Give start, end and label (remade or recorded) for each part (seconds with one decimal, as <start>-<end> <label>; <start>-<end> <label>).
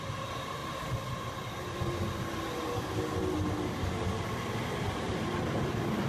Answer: 0.0-6.1 recorded